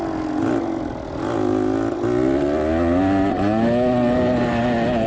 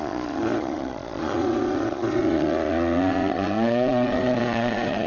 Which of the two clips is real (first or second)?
first